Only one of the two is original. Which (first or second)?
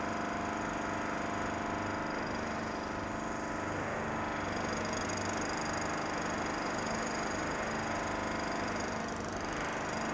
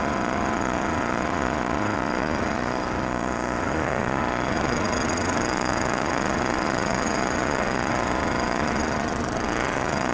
first